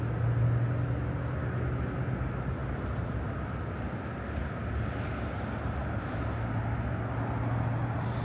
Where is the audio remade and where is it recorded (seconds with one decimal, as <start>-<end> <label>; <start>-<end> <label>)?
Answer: 0.0-8.2 recorded